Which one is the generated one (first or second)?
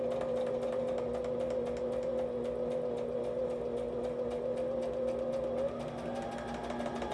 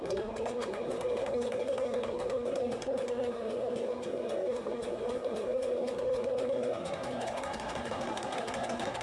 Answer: second